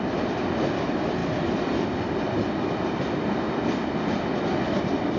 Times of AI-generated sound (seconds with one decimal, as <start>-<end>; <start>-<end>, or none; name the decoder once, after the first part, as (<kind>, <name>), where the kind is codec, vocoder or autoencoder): none